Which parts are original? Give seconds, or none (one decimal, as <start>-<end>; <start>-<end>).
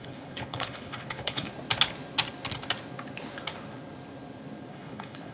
1.5-4.7